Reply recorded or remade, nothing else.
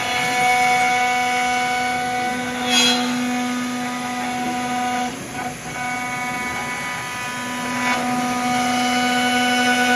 recorded